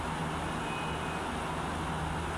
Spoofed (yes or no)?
no